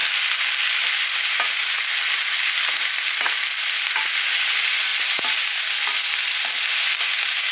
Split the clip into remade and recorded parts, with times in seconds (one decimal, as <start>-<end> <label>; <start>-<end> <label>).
0.0-7.5 recorded